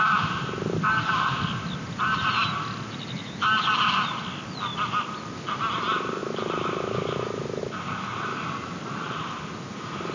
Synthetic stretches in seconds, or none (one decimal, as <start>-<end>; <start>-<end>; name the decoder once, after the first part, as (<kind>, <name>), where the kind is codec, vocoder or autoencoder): none

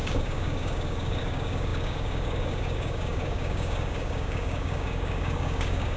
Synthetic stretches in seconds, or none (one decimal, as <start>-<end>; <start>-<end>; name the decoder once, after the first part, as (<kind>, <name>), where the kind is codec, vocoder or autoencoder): 0.0-6.0 (codec, DAC)

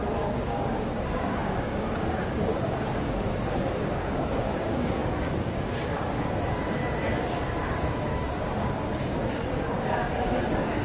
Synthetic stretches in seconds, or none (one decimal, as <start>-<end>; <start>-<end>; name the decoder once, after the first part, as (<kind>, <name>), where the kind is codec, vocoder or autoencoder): 0.0-10.8 (codec, DAC)

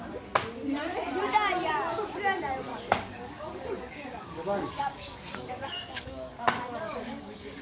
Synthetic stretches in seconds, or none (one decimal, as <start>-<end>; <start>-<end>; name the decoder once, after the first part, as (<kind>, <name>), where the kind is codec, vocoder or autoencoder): 2.7-7.6 (codec, DAC)